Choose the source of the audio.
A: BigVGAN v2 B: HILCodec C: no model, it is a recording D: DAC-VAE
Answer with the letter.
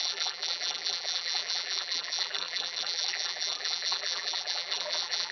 A